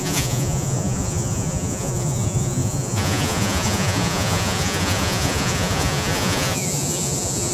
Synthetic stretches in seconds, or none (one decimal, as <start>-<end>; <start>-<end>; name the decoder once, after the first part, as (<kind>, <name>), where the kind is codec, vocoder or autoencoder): 0.0-7.5 (vocoder, Vocos)